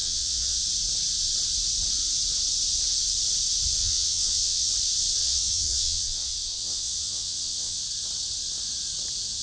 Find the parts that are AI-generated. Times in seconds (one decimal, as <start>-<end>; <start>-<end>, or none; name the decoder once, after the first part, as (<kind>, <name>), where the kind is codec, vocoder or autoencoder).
0.0-0.6 (vocoder, WaveNeXt); 3.8-4.7; 5.2-7.8